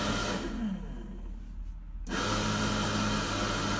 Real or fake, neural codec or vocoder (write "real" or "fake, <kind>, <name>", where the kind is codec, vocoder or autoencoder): real